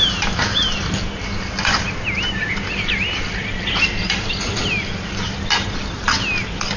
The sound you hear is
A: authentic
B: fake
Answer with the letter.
A